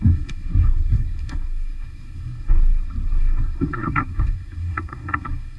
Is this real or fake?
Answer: fake